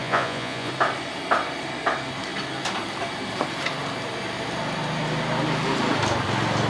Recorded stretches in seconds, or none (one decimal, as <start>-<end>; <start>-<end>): 0.7-6.7